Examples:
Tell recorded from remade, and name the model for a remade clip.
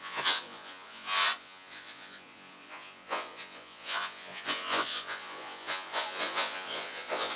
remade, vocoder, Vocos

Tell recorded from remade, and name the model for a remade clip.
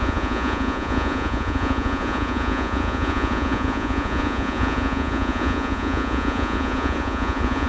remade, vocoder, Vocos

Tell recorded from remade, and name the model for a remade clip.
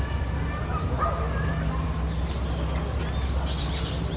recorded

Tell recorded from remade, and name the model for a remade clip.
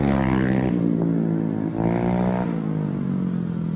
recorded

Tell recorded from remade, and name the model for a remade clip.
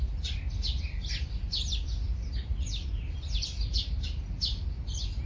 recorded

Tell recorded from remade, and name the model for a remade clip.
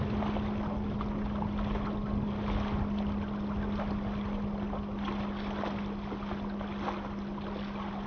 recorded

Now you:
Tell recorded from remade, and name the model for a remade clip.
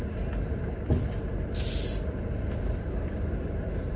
recorded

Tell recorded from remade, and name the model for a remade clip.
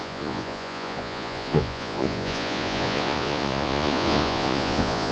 remade, vocoder, Vocos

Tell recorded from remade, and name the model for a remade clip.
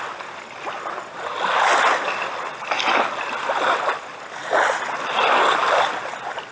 recorded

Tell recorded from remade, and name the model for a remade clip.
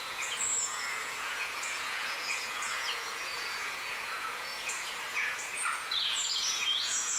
remade, vocoder, Vocos